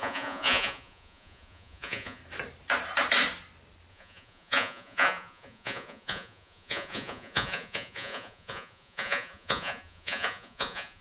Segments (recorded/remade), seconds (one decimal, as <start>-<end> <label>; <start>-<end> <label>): 0.0-2.2 remade; 2.2-3.9 recorded; 3.9-11.0 remade